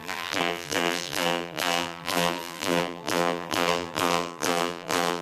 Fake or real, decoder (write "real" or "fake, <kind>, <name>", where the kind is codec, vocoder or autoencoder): fake, vocoder, BigVGAN v2